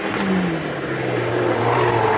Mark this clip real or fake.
real